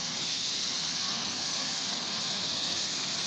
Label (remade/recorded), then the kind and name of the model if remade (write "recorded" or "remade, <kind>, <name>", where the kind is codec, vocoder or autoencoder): remade, codec, SNAC